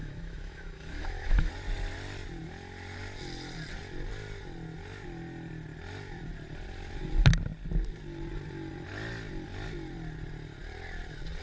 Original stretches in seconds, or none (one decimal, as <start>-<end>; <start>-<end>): 1.5-11.4